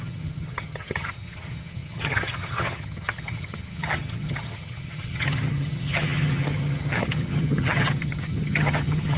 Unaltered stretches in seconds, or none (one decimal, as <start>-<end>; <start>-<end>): none